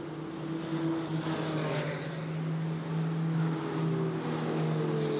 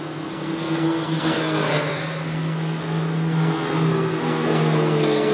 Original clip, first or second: first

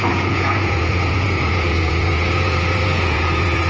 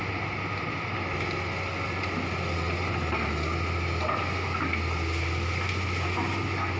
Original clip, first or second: second